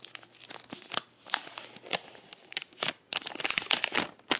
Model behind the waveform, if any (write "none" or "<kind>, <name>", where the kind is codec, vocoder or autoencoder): none